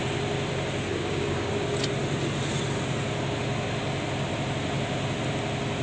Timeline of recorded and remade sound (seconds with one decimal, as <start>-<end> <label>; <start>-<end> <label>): 0.0-0.9 recorded; 0.9-1.5 remade; 1.5-5.8 recorded